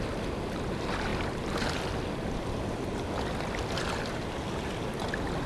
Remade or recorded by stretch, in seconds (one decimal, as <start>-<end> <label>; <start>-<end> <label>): 0.0-1.1 recorded; 1.1-4.4 remade; 4.4-5.5 recorded